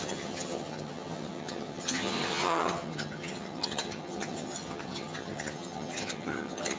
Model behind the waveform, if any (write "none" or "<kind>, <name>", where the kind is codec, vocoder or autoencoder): vocoder, HiFi-GAN